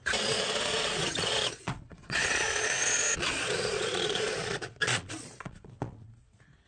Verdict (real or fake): fake